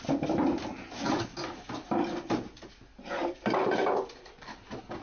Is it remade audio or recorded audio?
recorded